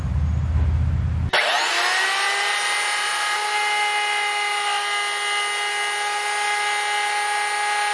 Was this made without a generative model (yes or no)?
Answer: yes